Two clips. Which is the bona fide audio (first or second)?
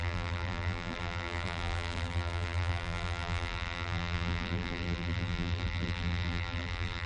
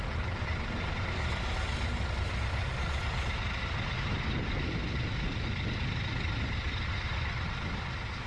second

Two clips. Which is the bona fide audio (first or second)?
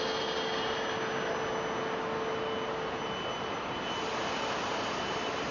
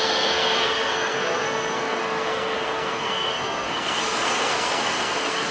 first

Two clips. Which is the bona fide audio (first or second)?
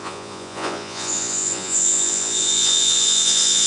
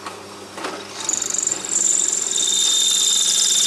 second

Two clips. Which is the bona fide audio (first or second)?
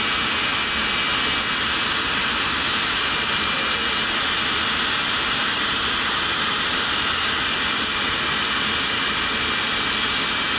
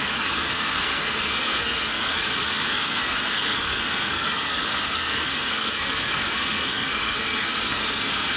first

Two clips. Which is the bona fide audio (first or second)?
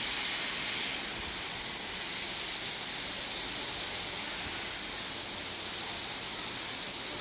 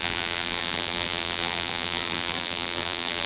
first